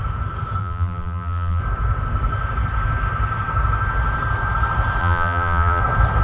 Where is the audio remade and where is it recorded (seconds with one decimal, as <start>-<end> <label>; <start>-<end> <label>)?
0.0-0.6 recorded; 0.6-1.6 remade; 1.6-5.0 recorded; 5.0-5.8 remade; 5.8-6.2 recorded